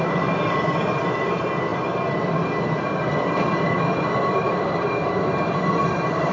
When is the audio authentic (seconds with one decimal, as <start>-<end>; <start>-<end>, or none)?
0.0-6.3